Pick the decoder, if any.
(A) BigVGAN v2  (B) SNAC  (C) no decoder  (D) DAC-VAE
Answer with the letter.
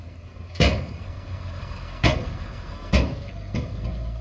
B